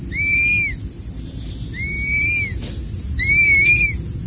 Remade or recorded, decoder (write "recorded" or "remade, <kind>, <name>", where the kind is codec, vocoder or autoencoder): recorded